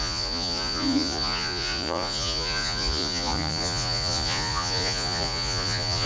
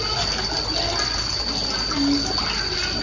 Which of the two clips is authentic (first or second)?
second